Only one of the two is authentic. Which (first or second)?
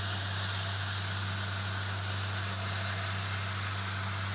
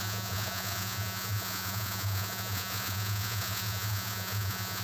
first